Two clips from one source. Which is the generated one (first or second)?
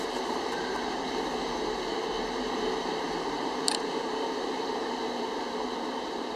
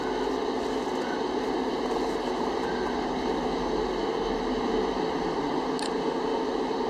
first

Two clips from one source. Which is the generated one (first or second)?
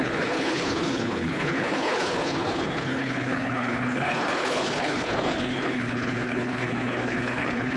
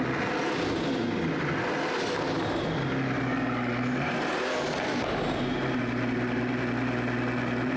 first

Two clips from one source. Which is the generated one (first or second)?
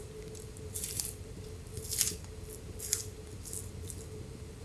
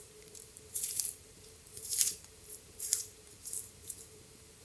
second